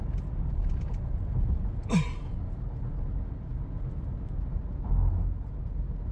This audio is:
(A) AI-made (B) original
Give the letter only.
B